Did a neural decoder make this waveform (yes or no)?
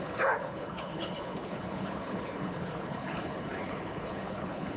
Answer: yes